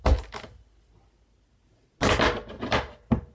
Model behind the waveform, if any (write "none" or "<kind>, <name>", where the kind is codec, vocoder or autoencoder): none